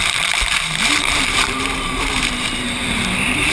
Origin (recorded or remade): remade